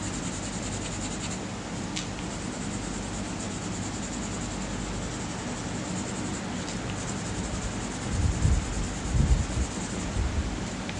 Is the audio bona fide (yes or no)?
yes